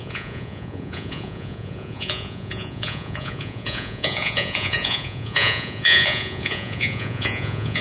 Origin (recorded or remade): remade